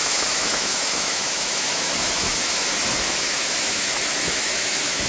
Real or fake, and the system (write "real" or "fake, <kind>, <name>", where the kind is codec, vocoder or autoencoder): fake, autoencoder, DAC-VAE